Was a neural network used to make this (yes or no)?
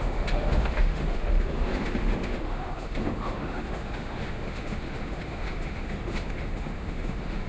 yes